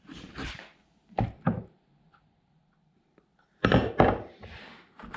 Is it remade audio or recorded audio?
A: remade